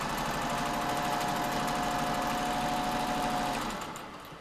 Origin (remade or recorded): recorded